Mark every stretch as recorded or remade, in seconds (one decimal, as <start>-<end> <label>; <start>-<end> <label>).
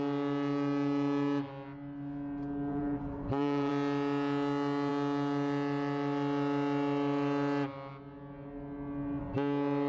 0.0-2.7 recorded; 2.7-3.7 remade; 3.7-9.9 recorded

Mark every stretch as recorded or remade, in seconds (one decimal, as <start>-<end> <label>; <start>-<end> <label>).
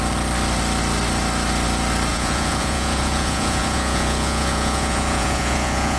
0.0-2.1 recorded; 2.1-6.0 remade